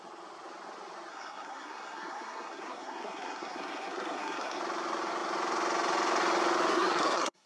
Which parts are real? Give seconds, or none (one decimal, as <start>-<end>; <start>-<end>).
0.0-1.1; 4.6-6.7